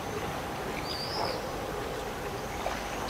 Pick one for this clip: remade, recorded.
recorded